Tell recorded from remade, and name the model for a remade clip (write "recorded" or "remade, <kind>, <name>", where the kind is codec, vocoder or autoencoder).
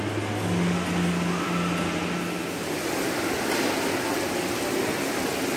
recorded